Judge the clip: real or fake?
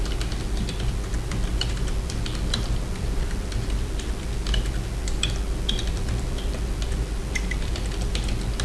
fake